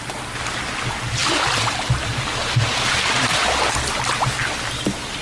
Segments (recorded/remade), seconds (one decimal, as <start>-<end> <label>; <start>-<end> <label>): 0.0-5.2 recorded